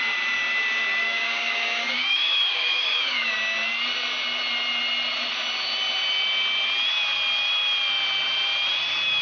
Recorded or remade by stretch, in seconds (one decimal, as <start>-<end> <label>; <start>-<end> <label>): 0.0-1.0 recorded; 1.0-3.3 remade; 3.3-9.2 recorded